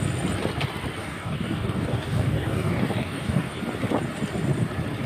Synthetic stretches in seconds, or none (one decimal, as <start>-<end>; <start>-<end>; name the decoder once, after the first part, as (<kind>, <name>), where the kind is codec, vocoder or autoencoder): 1.0-3.6 (codec, DAC)